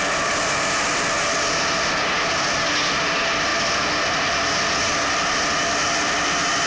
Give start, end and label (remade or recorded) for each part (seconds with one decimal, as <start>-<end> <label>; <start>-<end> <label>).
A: 0.0-6.7 recorded